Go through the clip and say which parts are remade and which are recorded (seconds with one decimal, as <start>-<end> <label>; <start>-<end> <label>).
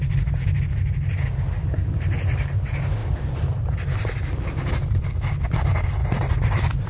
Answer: 0.0-3.0 recorded; 3.0-3.6 remade; 3.6-6.0 recorded; 6.0-6.9 remade